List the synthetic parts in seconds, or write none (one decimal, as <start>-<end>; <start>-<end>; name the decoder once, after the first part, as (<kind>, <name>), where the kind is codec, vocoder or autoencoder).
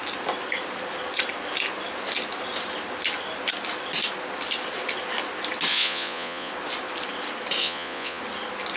5.7-6.5 (vocoder, Vocos); 7.6-8.2